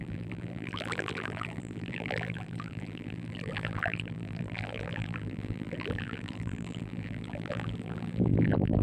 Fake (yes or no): yes